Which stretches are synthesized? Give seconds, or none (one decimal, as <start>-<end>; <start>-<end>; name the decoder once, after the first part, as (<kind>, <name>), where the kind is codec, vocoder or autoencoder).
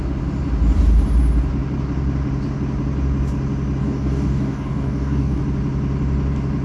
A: 3.8-5.4 (codec, DAC)